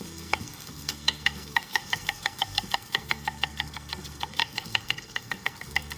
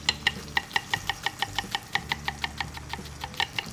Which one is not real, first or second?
first